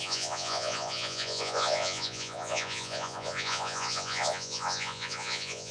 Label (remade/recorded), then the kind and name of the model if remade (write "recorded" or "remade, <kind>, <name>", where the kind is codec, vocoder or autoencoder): remade, vocoder, Vocos